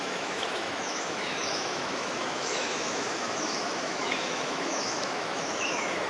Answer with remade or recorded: remade